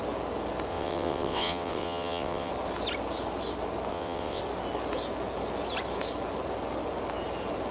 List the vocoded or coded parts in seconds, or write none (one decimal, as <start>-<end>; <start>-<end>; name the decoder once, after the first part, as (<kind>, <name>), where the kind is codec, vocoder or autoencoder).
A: 0.7-2.5 (vocoder, WaveNeXt); 3.9-4.4